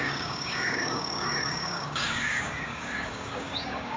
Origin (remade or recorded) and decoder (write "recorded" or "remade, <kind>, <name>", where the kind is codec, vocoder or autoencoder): remade, codec, DAC